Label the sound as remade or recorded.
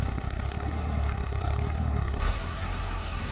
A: remade